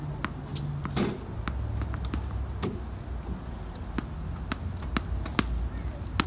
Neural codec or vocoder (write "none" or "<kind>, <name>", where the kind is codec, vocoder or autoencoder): none